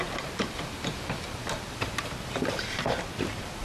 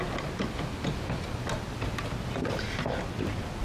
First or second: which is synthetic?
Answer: first